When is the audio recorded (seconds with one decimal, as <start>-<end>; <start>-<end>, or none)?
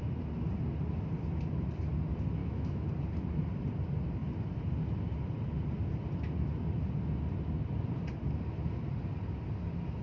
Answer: 0.0-2.4; 2.9-10.0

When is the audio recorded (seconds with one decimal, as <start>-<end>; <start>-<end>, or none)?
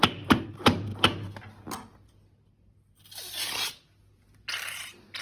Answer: 0.0-5.2